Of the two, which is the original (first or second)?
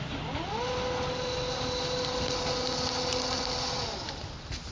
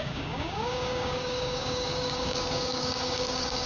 first